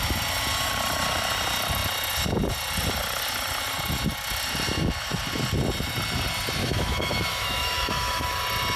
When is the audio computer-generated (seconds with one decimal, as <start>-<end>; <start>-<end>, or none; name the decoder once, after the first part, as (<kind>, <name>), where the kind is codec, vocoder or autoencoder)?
6.6-8.4 (autoencoder, DAC-VAE)